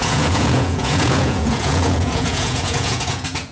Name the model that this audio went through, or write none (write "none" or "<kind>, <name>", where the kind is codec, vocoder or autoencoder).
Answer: vocoder, Vocos